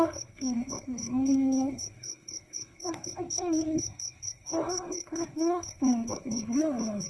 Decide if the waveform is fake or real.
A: fake